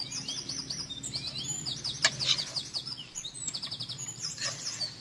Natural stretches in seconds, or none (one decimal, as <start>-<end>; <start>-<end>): 0.0-5.0